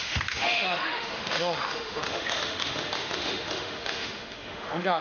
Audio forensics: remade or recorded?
remade